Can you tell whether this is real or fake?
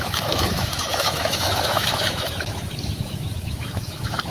fake